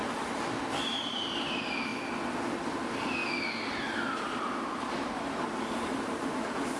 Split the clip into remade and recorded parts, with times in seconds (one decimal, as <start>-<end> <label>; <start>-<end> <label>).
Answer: 0.0-1.9 remade; 1.9-2.7 recorded; 2.7-3.2 remade; 3.2-4.2 recorded; 4.2-6.8 remade